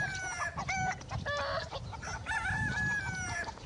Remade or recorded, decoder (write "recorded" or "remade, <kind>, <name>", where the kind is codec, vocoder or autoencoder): recorded